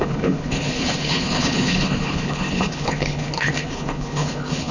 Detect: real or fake fake